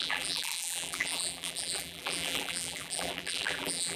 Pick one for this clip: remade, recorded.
remade